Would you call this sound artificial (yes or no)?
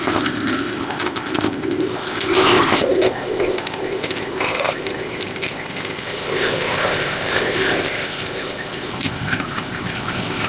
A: yes